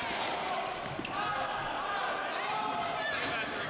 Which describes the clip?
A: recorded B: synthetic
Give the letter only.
A